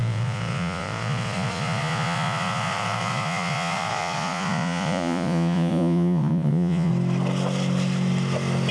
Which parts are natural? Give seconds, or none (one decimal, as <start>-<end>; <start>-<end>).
6.9-8.7

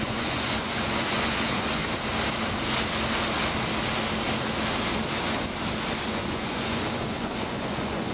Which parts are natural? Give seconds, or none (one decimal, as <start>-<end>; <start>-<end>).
1.8-6.0

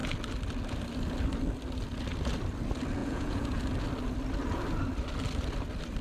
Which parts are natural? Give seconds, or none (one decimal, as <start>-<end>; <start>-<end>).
0.0-3.0; 3.6-6.0

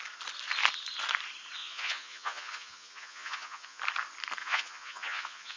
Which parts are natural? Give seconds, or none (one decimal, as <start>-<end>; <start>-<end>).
0.0-1.6; 3.8-4.4

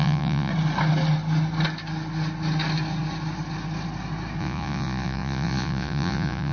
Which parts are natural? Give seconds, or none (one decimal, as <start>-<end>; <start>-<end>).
0.5-4.4